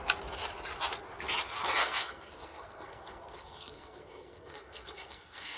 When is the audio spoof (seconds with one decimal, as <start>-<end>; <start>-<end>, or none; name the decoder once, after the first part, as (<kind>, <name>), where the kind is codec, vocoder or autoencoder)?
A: 1.8-5.6 (codec, SNAC)